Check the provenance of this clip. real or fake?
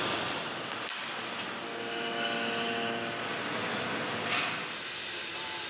real